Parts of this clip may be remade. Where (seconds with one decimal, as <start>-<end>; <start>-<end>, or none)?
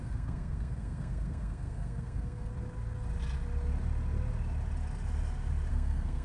0.0-2.5; 5.7-6.2